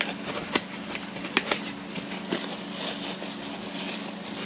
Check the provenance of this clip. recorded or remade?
recorded